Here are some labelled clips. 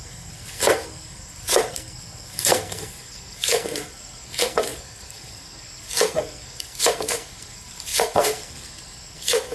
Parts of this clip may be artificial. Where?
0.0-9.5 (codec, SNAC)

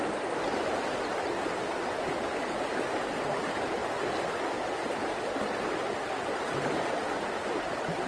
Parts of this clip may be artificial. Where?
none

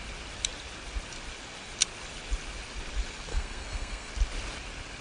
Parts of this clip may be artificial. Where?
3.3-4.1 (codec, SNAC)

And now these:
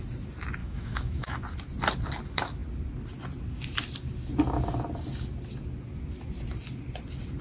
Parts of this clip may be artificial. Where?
0.6-1.4 (autoencoder, DAC-VAE)

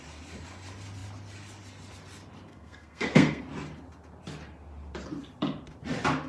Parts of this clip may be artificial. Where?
2.5-3.4 (codec, SNAC)

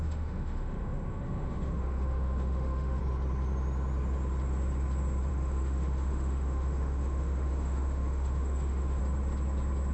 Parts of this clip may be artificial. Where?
0.0-3.0 (autoencoder, DAC-VAE); 5.3-9.0

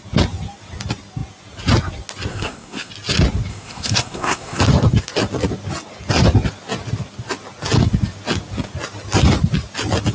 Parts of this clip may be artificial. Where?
2.3-2.9 (codec, SNAC); 3.5-4.6